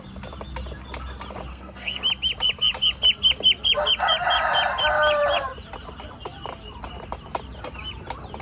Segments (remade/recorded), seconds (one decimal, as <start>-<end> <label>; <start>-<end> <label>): 0.0-1.5 recorded; 1.5-2.0 remade; 2.0-8.4 recorded